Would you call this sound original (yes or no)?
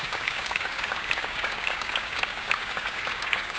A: no